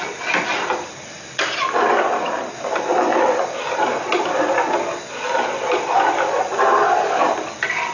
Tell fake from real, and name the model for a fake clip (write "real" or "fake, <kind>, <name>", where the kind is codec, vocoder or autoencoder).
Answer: real